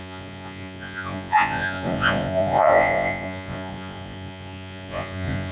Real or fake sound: fake